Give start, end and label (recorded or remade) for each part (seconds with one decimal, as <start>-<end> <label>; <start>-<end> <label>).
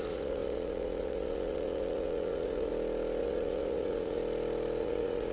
0.0-2.7 remade; 2.7-3.2 recorded; 3.2-4.2 remade; 4.2-4.8 recorded; 4.8-5.3 remade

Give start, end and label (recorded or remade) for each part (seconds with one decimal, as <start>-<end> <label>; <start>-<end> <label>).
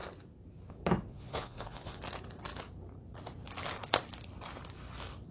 0.0-1.1 recorded; 1.1-2.0 remade; 2.0-5.3 recorded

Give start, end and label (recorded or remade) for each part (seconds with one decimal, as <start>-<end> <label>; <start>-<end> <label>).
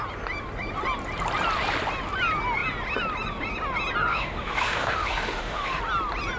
0.0-4.1 recorded; 4.1-5.8 remade; 5.8-6.4 recorded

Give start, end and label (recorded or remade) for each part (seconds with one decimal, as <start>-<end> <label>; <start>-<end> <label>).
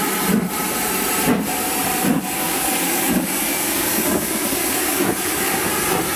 0.0-2.1 recorded; 2.1-5.7 remade; 5.7-6.2 recorded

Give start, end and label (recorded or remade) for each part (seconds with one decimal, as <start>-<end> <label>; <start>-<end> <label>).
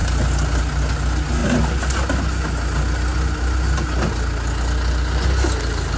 0.0-6.0 recorded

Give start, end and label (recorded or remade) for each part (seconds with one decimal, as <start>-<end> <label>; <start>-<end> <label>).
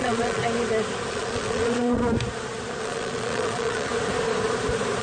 0.0-0.4 remade; 0.4-1.1 recorded; 1.1-2.0 remade; 2.0-2.8 recorded; 2.8-3.9 remade; 3.9-5.0 recorded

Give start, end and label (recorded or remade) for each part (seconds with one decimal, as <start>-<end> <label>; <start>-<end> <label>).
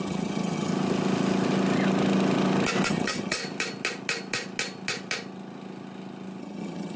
0.0-0.7 remade; 0.7-2.9 recorded; 2.9-3.4 remade; 3.4-6.4 recorded; 6.4-7.0 remade